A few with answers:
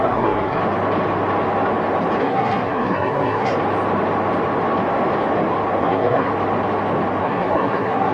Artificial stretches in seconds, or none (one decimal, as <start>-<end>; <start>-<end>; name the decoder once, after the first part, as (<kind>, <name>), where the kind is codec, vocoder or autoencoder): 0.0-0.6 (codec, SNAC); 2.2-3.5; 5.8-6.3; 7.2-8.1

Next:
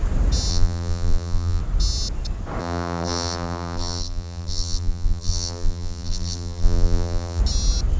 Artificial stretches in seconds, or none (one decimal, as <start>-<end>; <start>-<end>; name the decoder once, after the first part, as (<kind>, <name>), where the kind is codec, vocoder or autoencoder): 0.5-1.6 (vocoder, BigVGAN v2); 2.6-7.4

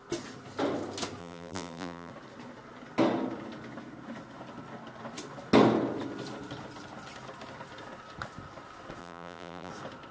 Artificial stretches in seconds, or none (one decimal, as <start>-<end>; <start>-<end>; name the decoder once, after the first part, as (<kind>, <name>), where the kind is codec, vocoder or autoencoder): 1.2-2.1 (vocoder, BigVGAN v2); 9.0-9.7

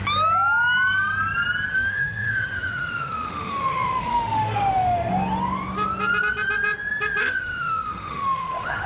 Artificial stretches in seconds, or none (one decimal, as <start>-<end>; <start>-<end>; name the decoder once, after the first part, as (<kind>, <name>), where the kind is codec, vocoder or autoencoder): 1.7-5.1 (autoencoder, DAC-VAE); 7.2-8.9

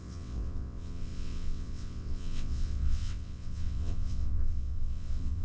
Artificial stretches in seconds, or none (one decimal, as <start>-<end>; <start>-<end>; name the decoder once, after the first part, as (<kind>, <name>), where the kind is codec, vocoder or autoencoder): 0.0-5.4 (vocoder, WaveNeXt)